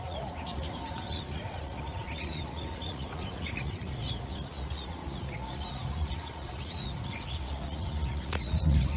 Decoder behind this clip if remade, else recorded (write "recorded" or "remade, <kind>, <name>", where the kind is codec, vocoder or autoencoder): remade, vocoder, Vocos